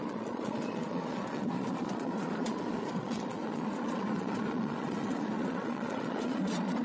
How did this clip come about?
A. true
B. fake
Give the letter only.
B